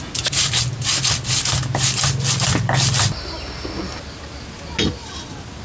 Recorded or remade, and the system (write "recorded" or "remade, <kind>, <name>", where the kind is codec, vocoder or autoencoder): recorded